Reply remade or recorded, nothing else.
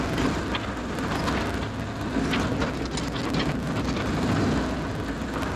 recorded